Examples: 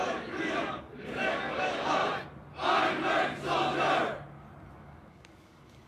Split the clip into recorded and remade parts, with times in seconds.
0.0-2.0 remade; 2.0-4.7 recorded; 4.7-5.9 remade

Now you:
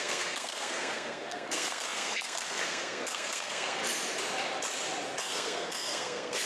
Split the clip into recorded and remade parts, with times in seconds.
0.0-3.8 remade; 3.8-5.2 recorded; 5.2-6.5 remade

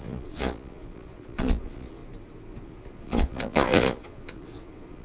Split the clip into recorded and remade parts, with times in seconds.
0.0-2.0 remade; 2.0-2.6 recorded; 2.6-5.0 remade

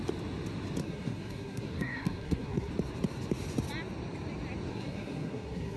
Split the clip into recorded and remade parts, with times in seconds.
0.0-0.8 recorded; 0.8-2.7 remade; 2.7-4.7 recorded; 4.7-5.8 remade